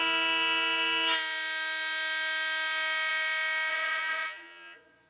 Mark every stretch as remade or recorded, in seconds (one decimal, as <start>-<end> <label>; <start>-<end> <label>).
0.0-3.7 recorded; 3.7-5.1 remade